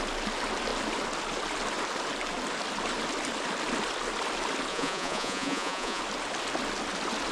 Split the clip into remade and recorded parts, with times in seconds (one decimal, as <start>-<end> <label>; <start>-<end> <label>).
0.0-4.7 recorded; 4.7-6.0 remade; 6.0-7.3 recorded